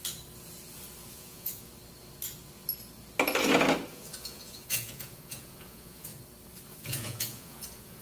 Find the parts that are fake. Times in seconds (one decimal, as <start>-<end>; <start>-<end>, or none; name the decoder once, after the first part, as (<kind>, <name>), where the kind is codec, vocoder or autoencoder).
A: 1.1-1.7 (vocoder, Vocos); 3.9-6.1; 6.7-8.0